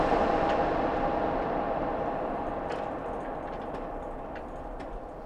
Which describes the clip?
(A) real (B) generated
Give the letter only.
A